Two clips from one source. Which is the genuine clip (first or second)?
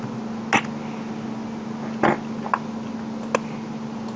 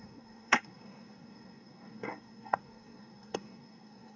first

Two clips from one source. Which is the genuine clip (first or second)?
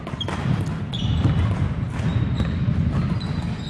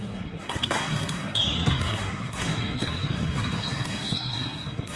first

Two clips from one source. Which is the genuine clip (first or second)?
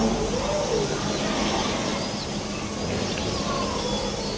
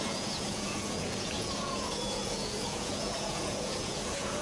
first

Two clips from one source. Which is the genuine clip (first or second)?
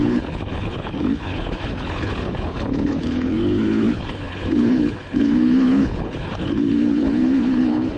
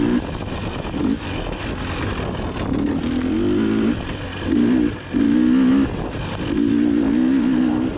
second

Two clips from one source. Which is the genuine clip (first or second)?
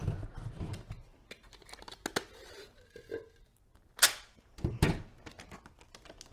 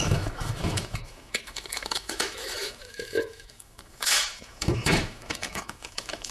first